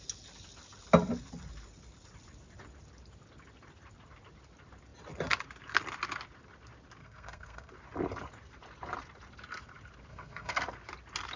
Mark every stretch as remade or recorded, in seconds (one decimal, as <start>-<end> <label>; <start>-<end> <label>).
0.0-7.0 recorded; 7.0-7.7 remade; 7.7-10.1 recorded; 10.1-10.6 remade; 10.6-11.4 recorded